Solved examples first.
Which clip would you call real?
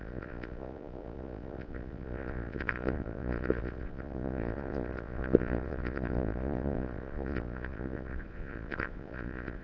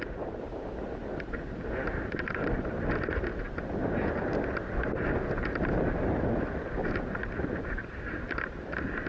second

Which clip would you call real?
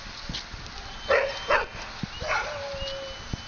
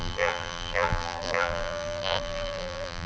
first